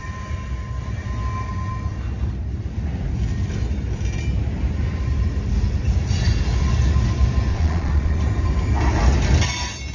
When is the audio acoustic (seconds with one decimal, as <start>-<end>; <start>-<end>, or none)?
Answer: 0.0-7.5; 8.2-9.9